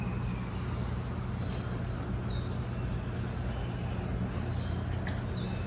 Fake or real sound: real